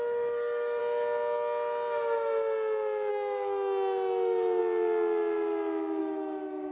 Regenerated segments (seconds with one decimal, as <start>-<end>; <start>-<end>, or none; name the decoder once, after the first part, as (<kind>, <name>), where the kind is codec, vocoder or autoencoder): 0.0-0.8 (autoencoder, DAC-VAE); 3.1-4.6; 6.0-6.7